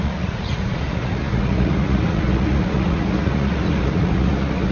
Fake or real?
fake